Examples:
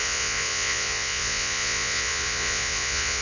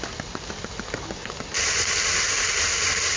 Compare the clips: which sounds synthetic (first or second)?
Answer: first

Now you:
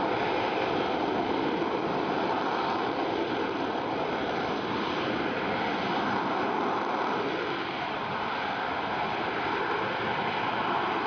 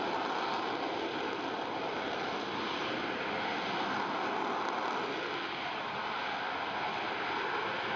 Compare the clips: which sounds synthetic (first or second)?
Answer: first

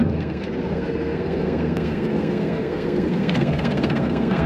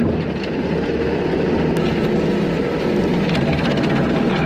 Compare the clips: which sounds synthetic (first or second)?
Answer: first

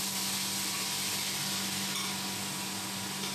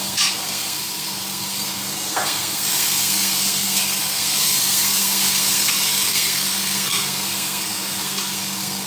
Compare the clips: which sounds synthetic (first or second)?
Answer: second